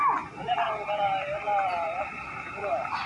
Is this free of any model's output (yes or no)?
yes